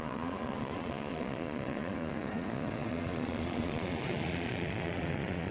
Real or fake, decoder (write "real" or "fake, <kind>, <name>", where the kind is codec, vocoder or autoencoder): fake, vocoder, Vocos